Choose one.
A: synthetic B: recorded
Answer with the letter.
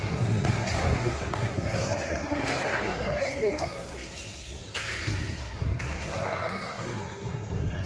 A